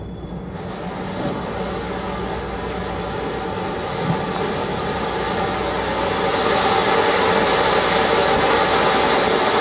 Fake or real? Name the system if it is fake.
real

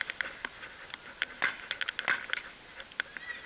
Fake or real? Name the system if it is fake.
real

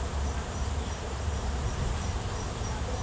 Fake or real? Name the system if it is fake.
fake, vocoder, BigVGAN v2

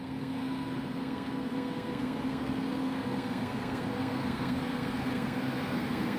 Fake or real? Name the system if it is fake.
fake, codec, SNAC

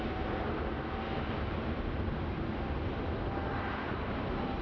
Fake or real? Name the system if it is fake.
real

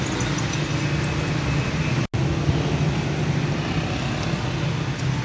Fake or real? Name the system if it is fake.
real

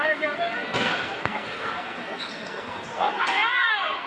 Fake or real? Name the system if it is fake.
fake, codec, SNAC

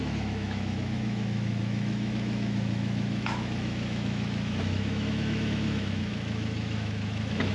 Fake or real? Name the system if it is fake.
fake, autoencoder, DAC-VAE